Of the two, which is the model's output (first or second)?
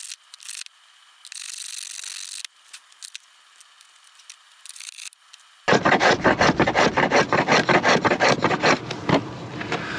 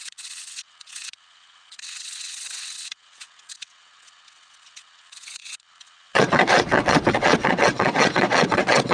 second